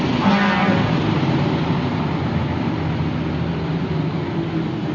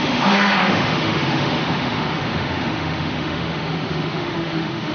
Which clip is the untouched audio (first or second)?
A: first